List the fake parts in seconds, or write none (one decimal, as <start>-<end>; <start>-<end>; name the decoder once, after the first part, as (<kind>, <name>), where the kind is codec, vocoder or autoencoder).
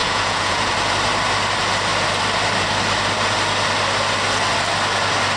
0.0-0.7 (vocoder, Vocos)